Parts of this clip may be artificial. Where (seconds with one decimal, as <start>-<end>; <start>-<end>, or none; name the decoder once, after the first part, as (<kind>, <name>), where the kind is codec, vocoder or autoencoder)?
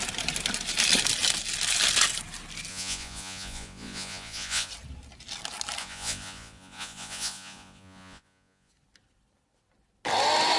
2.7-4.7 (vocoder, Vocos); 5.8-8.7